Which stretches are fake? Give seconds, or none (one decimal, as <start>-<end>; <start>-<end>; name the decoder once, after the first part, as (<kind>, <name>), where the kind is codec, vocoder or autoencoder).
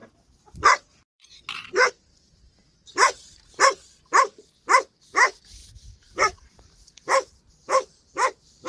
0.0-3.5 (vocoder, BigVGAN v2); 5.6-6.5